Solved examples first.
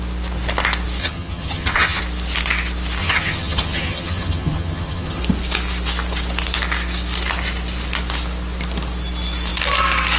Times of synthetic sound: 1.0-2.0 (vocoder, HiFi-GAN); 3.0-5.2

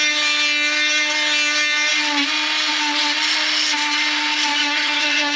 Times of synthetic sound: 4.6-5.4 (vocoder, HiFi-GAN)

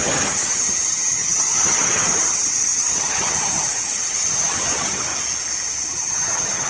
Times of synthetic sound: 0.0-5.1 (vocoder, HiFi-GAN); 5.9-6.7

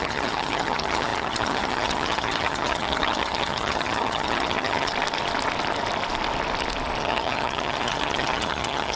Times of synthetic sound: 0.0-4.9 (vocoder, HiFi-GAN); 7.0-9.0

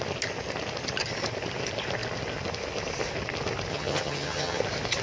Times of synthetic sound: 3.7-4.6 (vocoder, HiFi-GAN)

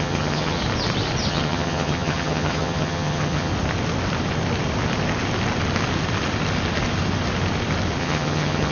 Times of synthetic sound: 0.0-0.6 (vocoder, HiFi-GAN); 1.3-3.5; 8.0-8.7

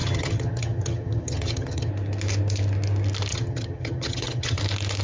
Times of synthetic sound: 0.0-1.9 (vocoder, HiFi-GAN); 3.3-4.6

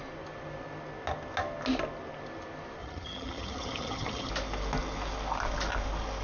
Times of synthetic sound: 2.8-4.3 (vocoder, HiFi-GAN)